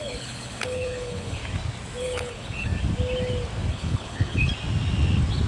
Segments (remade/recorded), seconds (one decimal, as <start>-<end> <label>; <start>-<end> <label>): 0.0-1.4 remade; 1.4-2.0 recorded; 2.0-2.7 remade; 2.7-3.7 recorded; 3.7-4.5 remade; 4.5-5.5 recorded